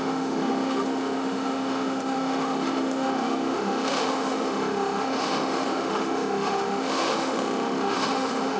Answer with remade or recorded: remade